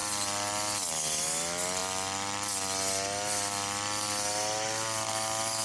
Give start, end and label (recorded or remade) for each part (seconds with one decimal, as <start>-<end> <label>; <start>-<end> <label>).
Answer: 0.0-5.6 recorded